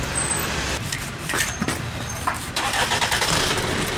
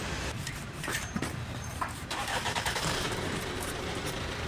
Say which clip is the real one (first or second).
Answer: first